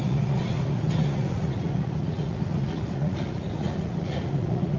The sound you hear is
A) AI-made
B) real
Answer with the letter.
A